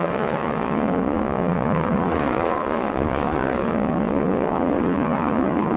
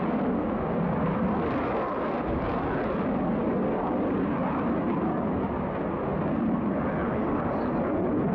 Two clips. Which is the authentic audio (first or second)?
second